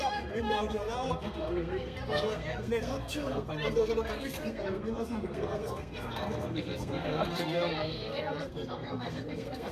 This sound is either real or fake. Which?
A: fake